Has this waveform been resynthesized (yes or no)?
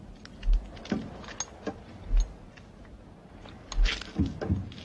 no